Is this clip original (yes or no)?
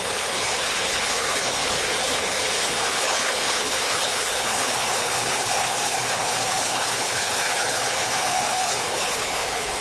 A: no